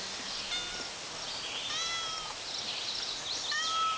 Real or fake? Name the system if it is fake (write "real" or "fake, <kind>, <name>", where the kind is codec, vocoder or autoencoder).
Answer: real